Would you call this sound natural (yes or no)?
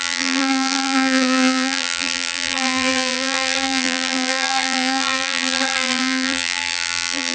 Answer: no